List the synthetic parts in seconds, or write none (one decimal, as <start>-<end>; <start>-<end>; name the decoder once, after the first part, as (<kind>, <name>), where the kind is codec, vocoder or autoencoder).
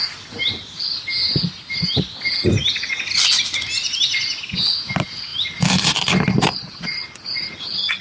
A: none